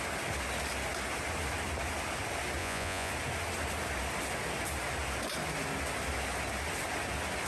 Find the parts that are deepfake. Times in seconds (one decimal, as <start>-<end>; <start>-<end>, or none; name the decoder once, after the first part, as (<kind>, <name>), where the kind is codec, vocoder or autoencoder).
2.6-3.1 (vocoder, Vocos)